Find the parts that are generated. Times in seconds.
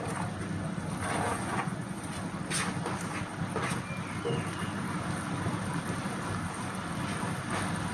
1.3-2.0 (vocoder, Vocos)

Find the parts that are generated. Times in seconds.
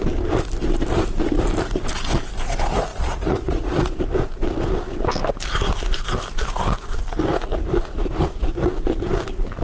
2.9-4.0 (vocoder, Vocos); 7.3-8.5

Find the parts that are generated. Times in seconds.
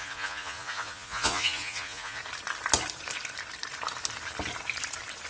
0.0-2.2 (vocoder, Vocos)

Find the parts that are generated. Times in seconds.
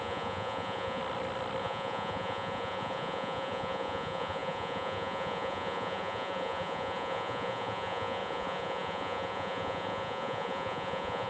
0.0-1.0 (vocoder, Vocos); 1.6-11.3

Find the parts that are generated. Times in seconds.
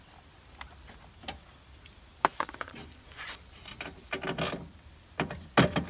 2.3-3.4 (vocoder, Vocos)